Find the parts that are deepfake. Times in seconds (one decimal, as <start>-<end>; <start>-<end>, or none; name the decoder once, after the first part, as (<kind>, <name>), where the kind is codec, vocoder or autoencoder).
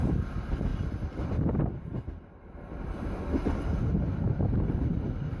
none